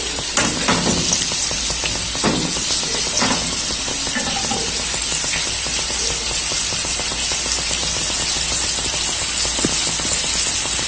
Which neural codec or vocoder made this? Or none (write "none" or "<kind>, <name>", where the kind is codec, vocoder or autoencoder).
none